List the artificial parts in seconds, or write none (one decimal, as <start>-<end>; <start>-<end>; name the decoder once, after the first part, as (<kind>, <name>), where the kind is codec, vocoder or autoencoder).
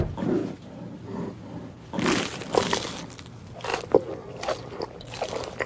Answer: 3.7-5.7 (vocoder, BigVGAN v2)